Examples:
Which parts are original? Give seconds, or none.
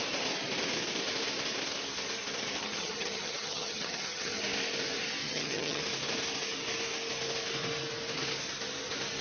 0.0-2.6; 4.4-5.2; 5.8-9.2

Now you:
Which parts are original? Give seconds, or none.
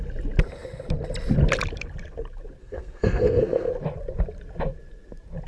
0.0-2.6; 3.7-5.5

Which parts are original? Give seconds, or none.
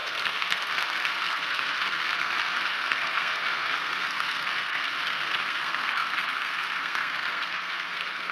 none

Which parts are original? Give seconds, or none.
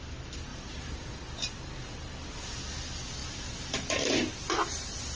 0.0-0.5; 1.2-5.1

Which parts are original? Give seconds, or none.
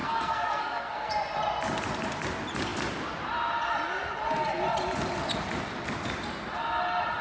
1.1-7.2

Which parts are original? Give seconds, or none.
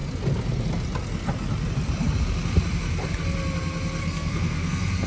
0.0-4.0